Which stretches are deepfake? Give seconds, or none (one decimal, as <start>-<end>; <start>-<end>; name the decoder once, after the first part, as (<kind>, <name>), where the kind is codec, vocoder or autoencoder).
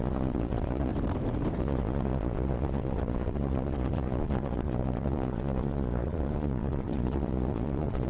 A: 0.0-0.9 (vocoder, Vocos); 1.6-8.1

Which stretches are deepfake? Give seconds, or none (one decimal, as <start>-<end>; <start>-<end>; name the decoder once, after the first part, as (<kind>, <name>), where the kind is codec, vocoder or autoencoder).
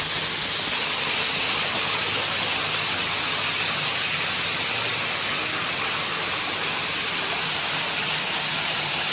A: none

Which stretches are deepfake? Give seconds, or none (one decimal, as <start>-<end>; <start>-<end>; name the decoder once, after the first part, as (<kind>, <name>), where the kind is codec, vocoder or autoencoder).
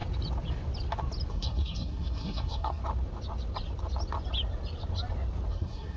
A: 1.3-2.8 (codec, SNAC); 5.5-6.0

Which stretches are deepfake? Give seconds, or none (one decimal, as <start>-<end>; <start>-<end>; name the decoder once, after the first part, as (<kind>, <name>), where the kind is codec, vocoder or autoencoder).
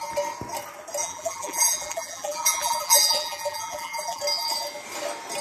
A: 1.0-4.2 (vocoder, BigVGAN v2)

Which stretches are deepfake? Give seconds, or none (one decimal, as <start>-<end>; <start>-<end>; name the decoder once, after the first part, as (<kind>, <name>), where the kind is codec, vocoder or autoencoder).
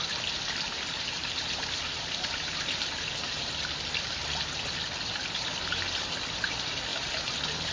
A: 1.2-3.1 (vocoder, BigVGAN v2); 6.9-7.7